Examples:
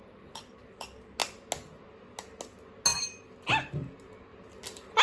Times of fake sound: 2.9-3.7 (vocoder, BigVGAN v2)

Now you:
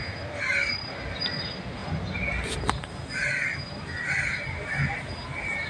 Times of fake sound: 1.8-2.3 (vocoder, BigVGAN v2)

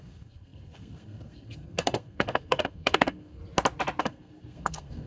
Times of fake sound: 0.0-3.4 (codec, SNAC); 4.0-5.1

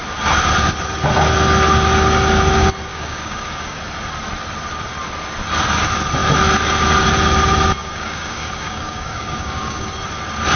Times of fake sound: 2.9-3.8 (codec, DAC); 7.8-9.9

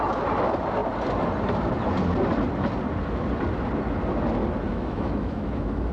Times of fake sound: 4.7-5.9 (autoencoder, DAC-VAE)

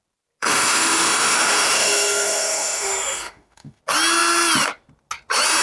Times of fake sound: 0.4-3.8 (autoencoder, DAC-VAE)

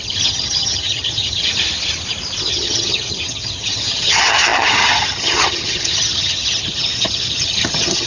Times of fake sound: 0.0-1.5 (vocoder, HiFi-GAN); 2.5-8.1

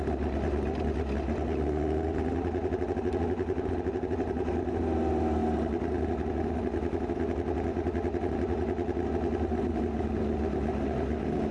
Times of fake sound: none